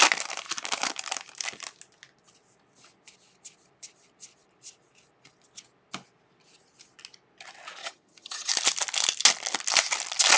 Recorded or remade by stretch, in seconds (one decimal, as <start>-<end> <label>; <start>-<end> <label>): 0.0-7.8 recorded; 7.8-8.5 remade; 8.5-10.4 recorded